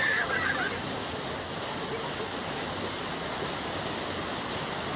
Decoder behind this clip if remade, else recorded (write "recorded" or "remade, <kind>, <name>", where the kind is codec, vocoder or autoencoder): recorded